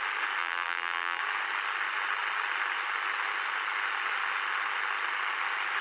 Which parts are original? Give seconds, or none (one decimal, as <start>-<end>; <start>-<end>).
0.0-0.4; 1.2-5.8

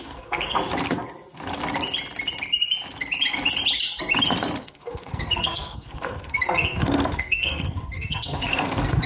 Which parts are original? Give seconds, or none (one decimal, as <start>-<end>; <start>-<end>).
0.6-4.6

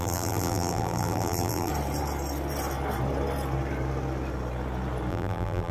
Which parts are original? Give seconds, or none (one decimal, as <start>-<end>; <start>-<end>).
1.7-5.1

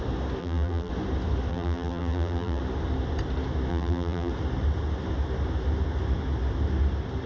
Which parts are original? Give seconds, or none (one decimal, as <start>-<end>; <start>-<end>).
0.0-0.4; 0.9-1.5; 2.6-3.7; 4.3-7.3

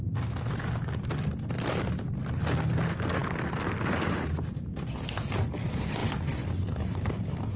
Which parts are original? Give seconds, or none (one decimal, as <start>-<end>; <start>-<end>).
0.0-7.6

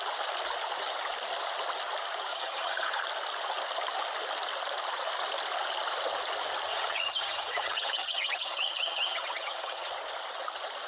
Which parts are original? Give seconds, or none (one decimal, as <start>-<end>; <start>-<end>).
0.0-2.3; 3.0-6.7; 9.9-10.9